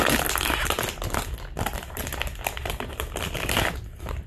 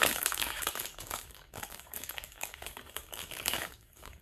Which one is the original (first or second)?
first